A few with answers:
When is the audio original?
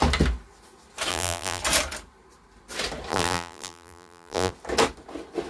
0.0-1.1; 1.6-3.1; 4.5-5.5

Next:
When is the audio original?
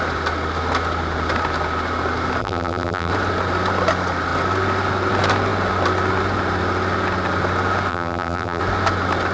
0.0-2.4; 3.1-7.9; 8.6-9.3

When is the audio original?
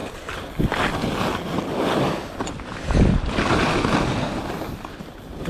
0.0-5.5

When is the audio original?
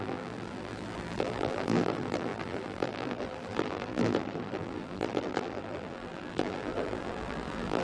none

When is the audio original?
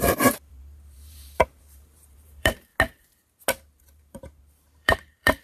2.7-3.8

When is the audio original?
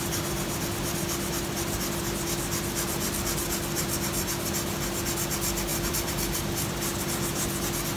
0.0-5.7; 6.7-8.0